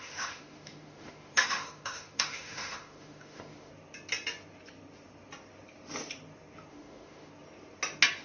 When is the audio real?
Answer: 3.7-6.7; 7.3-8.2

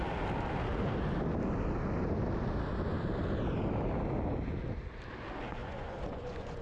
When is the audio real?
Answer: 0.0-5.6